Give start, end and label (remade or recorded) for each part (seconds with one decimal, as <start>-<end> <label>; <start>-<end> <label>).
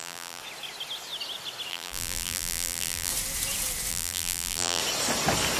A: 0.0-0.4 remade; 0.4-1.7 recorded; 1.7-3.1 remade; 3.1-3.9 recorded; 3.9-4.8 remade; 4.8-5.6 recorded